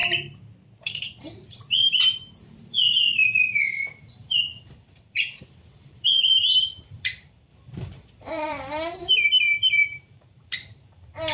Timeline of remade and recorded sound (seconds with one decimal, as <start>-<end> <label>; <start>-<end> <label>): 0.0-0.8 recorded; 0.8-11.3 remade